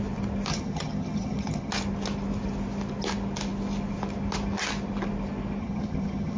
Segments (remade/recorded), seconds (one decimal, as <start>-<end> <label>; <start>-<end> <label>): 0.0-0.5 recorded; 0.5-1.7 remade; 1.7-5.6 recorded; 5.6-6.4 remade